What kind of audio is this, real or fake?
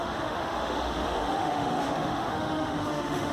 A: fake